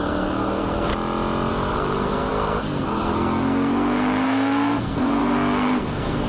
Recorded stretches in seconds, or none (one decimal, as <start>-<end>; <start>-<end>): 0.9-1.5